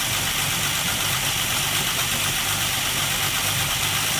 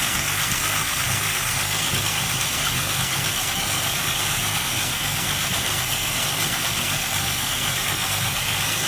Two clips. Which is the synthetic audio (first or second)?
second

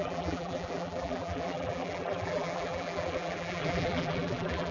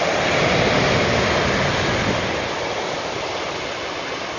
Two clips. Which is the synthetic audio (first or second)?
first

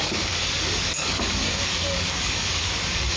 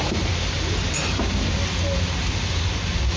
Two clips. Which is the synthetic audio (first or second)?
first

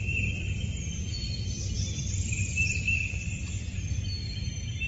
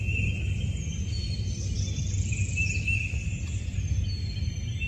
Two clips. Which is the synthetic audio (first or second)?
first